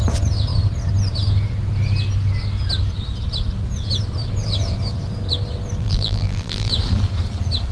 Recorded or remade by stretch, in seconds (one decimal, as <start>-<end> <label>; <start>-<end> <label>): 0.0-5.8 recorded; 5.8-6.7 remade; 6.7-7.7 recorded